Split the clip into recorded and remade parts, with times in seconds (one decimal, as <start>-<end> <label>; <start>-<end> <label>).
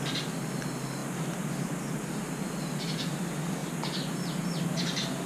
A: 0.0-5.3 recorded